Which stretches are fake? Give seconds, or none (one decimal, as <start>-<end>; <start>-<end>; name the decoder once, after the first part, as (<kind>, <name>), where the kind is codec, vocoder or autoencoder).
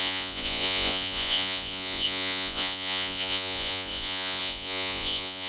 0.0-5.5 (vocoder, Vocos)